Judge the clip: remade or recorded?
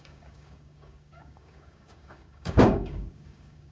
remade